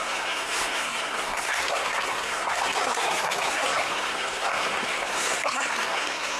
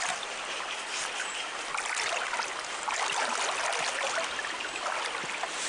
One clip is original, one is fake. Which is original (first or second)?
second